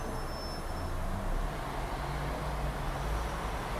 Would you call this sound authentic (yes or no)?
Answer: yes